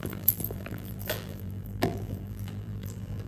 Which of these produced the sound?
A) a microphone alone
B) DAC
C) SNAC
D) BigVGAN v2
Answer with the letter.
D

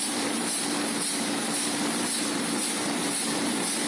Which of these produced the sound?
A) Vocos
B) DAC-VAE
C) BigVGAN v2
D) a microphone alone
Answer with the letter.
C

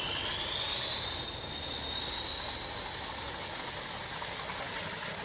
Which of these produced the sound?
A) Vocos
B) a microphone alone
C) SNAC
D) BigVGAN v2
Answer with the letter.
B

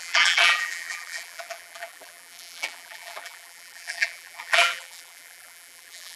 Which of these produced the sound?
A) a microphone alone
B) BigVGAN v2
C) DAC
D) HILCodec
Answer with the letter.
B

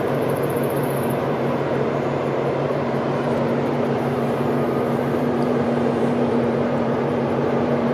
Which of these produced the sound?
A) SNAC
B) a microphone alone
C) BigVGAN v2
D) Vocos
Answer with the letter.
C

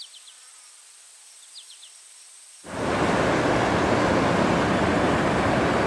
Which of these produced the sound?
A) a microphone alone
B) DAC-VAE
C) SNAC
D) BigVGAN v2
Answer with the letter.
A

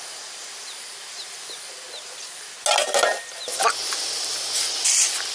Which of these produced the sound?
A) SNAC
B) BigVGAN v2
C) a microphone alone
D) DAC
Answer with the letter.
C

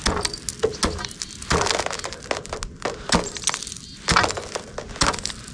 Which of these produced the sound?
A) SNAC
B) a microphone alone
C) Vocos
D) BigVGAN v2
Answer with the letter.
B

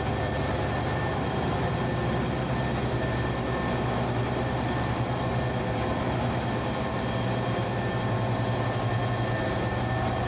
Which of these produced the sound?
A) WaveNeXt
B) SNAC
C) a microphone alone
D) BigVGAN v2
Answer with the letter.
C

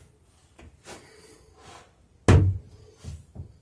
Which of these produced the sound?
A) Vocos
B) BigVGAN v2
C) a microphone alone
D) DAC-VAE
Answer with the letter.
C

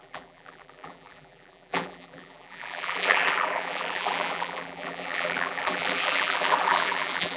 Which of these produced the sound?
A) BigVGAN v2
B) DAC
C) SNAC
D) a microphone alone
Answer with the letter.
A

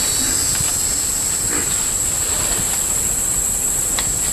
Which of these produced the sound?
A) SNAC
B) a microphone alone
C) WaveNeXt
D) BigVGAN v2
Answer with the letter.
D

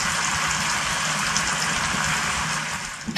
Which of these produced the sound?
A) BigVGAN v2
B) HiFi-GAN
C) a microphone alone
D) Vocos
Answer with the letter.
C